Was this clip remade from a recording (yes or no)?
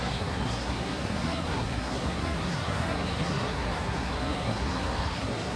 yes